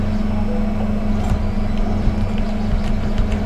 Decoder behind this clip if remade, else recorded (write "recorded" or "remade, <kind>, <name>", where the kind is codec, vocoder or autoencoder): recorded